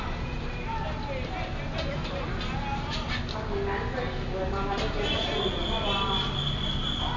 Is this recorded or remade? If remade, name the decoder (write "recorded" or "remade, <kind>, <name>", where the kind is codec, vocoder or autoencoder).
recorded